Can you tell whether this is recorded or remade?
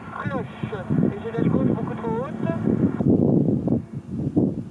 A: recorded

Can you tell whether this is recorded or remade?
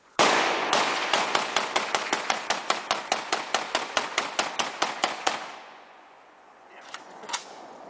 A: remade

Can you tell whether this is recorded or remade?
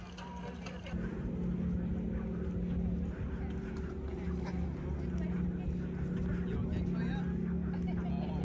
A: recorded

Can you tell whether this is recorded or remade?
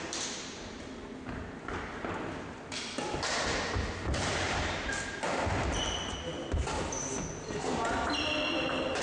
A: recorded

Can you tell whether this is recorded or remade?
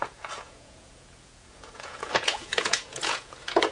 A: remade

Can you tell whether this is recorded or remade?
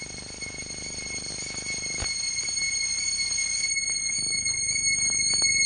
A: recorded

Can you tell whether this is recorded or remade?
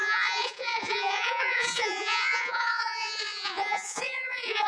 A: remade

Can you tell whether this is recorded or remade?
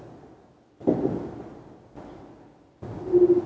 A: recorded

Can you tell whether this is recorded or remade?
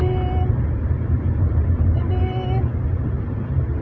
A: recorded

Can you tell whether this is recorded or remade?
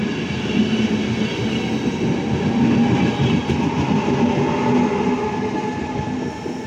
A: recorded